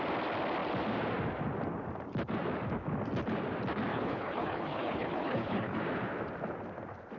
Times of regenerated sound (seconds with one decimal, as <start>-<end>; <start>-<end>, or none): 3.9-5.8